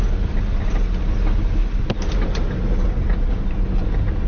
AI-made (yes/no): no